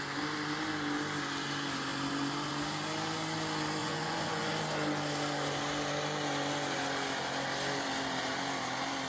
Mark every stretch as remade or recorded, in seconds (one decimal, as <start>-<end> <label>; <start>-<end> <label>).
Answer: 0.0-3.8 recorded; 3.8-4.5 remade; 4.5-9.1 recorded

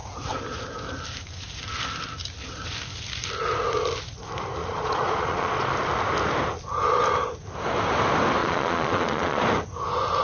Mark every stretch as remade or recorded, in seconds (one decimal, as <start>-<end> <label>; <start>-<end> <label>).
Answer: 0.0-4.6 recorded; 4.6-5.7 remade; 5.7-8.4 recorded; 8.4-9.4 remade; 9.4-10.2 recorded